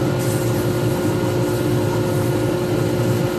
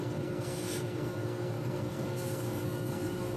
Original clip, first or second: first